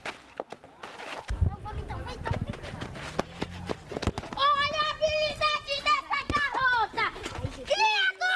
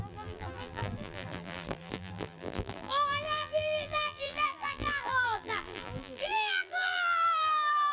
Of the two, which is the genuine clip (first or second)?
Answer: first